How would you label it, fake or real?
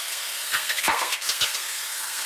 fake